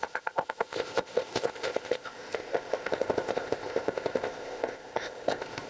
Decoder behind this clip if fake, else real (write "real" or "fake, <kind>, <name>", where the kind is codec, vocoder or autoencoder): fake, codec, ZipCodec